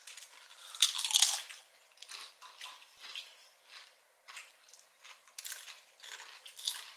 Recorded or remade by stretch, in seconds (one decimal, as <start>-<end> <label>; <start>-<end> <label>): 0.0-7.0 recorded